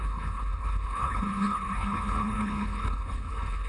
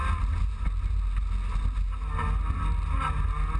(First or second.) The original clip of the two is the second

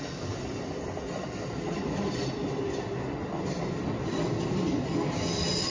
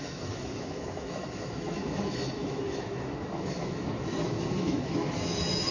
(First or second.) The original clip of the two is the first